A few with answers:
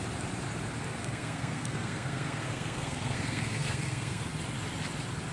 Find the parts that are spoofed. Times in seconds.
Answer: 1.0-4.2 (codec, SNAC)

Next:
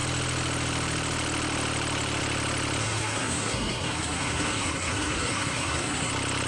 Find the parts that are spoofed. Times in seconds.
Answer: 2.8-6.1 (codec, SNAC)

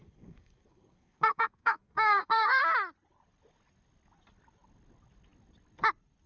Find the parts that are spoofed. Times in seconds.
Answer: 0.0-2.6 (codec, SNAC)

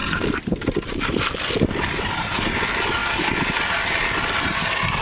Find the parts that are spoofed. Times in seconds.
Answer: none

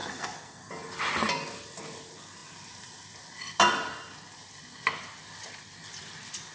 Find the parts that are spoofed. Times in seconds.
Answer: 0.0-0.7 (codec, SNAC)

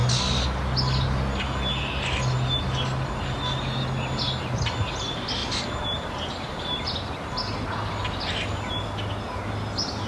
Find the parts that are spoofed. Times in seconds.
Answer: none

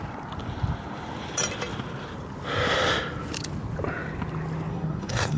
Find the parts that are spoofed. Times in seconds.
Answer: 4.7-5.4 (codec, SNAC)

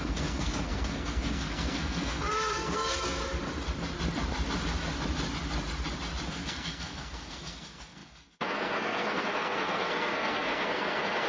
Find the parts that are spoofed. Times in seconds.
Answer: 0.0-3.2 (codec, SNAC); 6.3-11.3